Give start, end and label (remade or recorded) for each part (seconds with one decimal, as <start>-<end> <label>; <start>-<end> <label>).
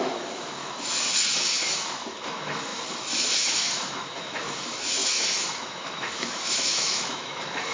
0.0-7.7 remade